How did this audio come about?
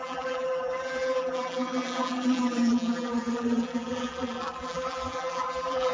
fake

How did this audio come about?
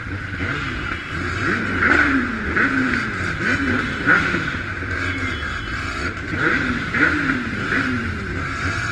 fake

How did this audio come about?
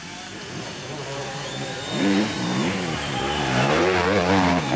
fake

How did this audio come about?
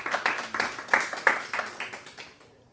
real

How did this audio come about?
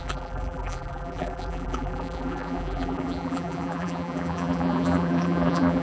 fake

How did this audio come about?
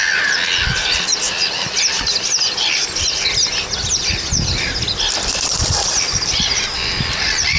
real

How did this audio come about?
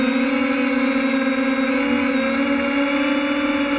real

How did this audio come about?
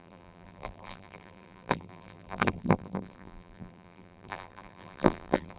fake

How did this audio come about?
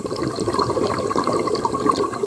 fake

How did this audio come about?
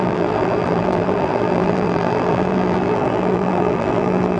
fake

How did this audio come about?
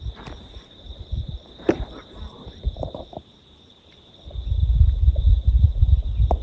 fake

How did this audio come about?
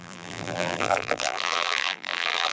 fake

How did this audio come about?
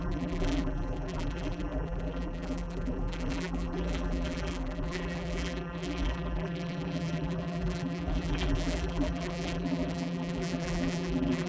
fake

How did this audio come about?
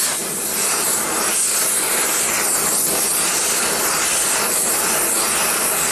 real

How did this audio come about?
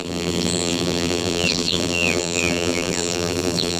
fake